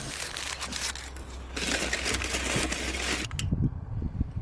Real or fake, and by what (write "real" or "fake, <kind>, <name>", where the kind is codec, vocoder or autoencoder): real